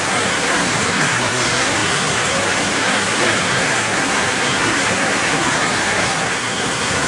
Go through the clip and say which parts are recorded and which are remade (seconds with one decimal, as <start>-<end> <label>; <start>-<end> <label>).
0.0-7.1 remade